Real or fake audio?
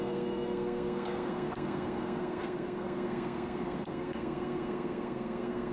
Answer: fake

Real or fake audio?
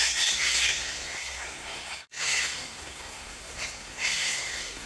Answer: fake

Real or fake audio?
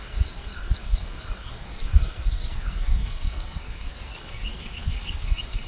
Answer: fake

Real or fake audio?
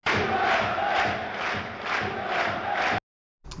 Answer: real